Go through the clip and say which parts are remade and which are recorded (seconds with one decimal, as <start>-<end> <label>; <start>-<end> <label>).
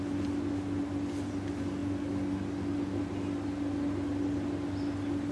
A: 0.0-5.3 recorded